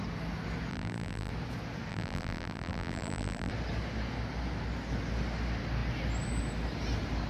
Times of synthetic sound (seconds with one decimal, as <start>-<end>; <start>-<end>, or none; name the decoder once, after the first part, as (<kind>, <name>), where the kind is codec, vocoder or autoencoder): 0.7-1.3 (vocoder, BigVGAN v2); 1.9-3.5